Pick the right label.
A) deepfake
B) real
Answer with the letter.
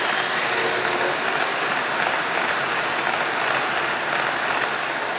B